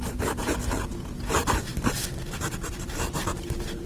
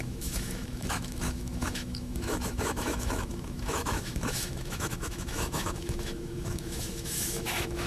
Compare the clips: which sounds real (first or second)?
first